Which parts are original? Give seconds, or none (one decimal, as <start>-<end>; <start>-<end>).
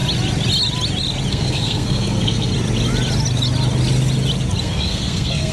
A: 0.0-1.3; 2.5-4.6